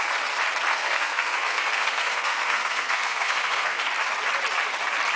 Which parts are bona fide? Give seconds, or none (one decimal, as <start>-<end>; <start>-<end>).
0.0-0.7; 3.8-5.2